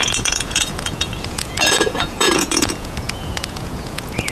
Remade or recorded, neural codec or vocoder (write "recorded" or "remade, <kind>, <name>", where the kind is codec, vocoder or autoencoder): remade, vocoder, Vocos